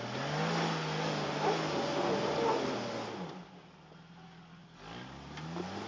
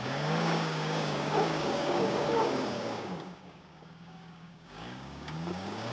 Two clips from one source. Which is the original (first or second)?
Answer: first